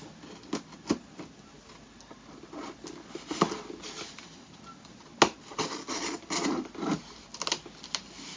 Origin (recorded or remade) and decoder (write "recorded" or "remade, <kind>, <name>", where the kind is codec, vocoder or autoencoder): recorded